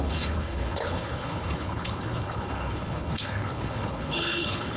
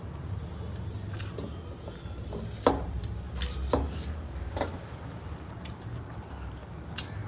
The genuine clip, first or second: second